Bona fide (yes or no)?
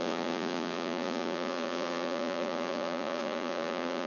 no